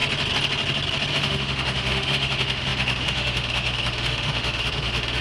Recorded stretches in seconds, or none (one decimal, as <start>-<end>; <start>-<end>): 0.0-1.1